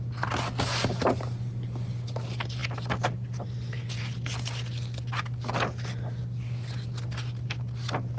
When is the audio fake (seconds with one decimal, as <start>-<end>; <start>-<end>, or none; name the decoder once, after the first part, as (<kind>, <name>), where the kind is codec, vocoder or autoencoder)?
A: none